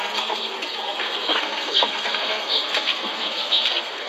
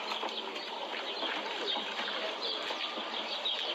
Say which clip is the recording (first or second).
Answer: second